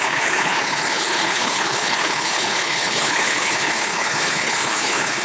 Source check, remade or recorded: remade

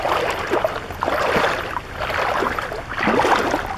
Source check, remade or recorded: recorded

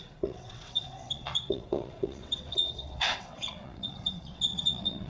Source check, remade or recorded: remade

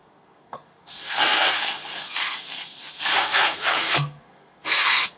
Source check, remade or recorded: remade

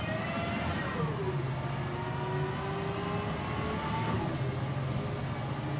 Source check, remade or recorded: recorded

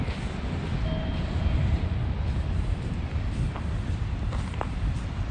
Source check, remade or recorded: remade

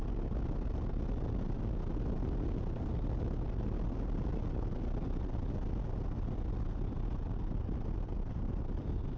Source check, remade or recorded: recorded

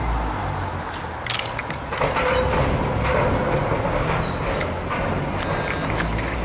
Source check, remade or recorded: recorded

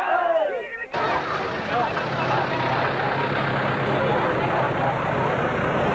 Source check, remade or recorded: recorded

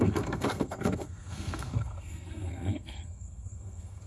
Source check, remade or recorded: remade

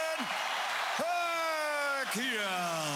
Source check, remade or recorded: recorded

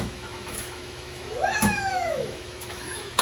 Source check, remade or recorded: remade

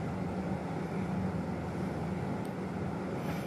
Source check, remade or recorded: recorded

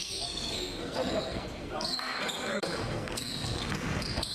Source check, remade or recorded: remade